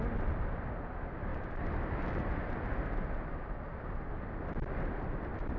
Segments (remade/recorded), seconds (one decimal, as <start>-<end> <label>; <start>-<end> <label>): 0.0-5.6 recorded